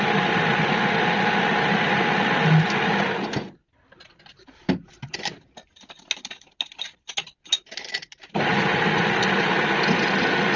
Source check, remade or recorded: recorded